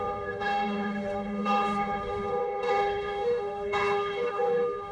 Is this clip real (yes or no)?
no